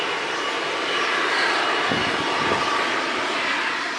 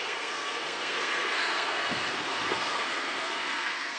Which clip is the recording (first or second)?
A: first